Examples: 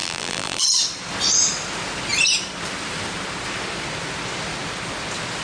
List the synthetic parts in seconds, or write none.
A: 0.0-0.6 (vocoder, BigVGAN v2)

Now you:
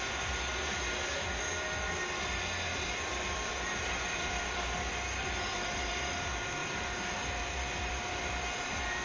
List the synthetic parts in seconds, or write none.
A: 2.7-4.9 (vocoder, BigVGAN v2); 6.6-8.3

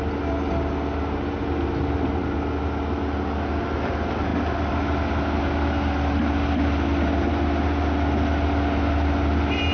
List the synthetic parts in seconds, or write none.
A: none

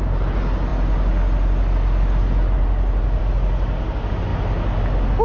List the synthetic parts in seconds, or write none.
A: none